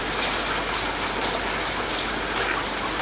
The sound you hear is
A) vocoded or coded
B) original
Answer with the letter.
B